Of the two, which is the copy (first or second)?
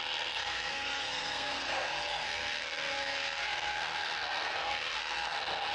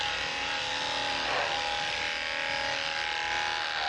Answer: first